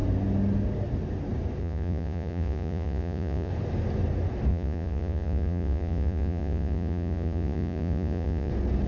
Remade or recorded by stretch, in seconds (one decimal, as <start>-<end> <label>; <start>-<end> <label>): 0.0-1.6 recorded; 1.6-3.5 remade; 3.5-4.5 recorded; 4.5-8.5 remade; 8.5-8.9 recorded